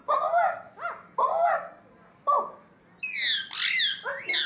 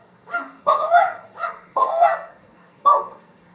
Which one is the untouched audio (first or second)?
first